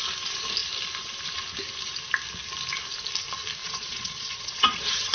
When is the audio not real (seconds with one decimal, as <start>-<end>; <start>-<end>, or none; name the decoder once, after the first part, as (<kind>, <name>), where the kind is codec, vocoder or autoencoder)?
3.6-5.1 (vocoder, Vocos)